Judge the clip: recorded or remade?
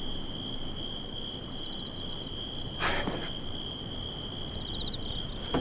recorded